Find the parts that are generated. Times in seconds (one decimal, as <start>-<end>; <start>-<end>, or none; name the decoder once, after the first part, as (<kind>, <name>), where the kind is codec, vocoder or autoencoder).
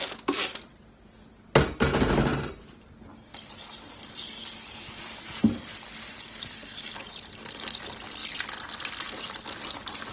none